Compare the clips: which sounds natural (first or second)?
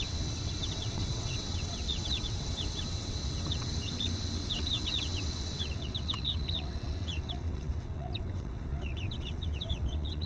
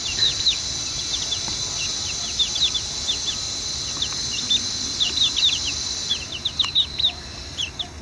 second